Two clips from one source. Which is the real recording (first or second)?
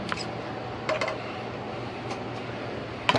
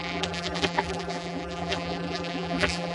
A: first